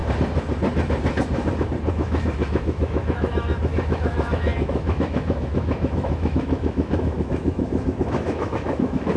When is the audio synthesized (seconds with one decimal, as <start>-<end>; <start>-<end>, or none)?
1.9-9.2